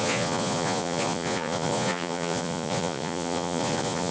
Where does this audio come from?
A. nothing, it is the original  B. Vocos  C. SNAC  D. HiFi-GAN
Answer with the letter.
B